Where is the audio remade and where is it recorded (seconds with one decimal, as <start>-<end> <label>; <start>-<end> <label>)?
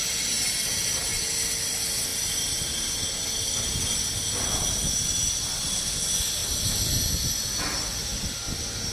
0.0-8.9 recorded